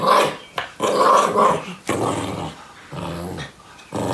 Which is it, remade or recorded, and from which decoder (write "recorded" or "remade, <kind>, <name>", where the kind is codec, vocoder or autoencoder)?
recorded